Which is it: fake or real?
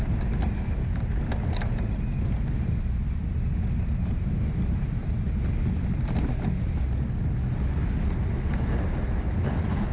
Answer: real